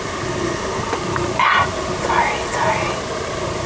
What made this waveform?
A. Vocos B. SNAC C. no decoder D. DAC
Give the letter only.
C